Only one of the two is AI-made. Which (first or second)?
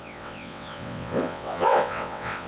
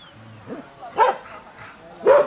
first